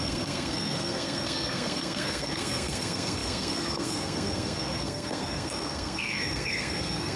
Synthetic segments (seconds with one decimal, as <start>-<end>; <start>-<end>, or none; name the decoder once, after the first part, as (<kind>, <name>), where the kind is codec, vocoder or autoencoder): 0.0-7.2 (codec, SNAC)